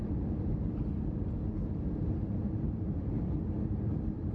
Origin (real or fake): real